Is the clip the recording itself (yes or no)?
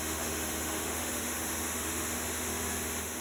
no